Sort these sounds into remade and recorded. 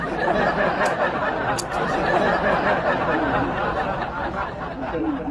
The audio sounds recorded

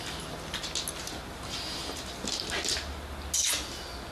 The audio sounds recorded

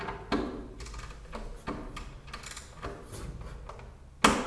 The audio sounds recorded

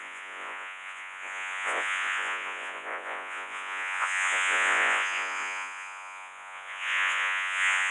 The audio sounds remade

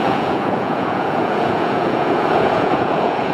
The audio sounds remade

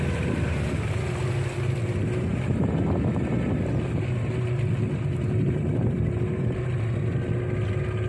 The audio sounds recorded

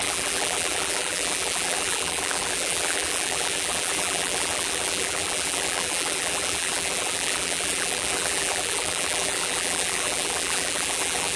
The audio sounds remade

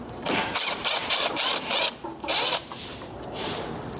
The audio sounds remade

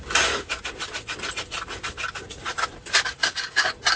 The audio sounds recorded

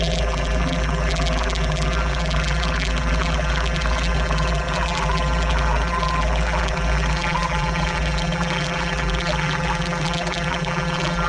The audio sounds remade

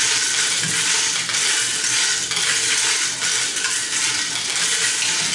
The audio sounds recorded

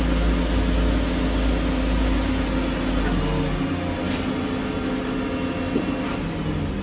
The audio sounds recorded